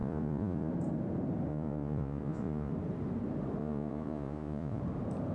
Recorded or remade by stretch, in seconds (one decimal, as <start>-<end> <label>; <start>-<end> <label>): 0.0-0.7 remade; 0.7-1.5 recorded; 1.5-2.7 remade; 2.7-3.6 recorded; 3.6-4.8 remade; 4.8-5.3 recorded